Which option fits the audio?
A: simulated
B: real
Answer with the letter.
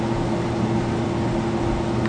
B